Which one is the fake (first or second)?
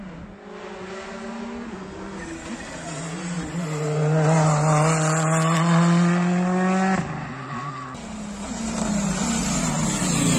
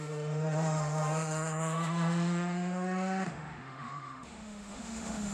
second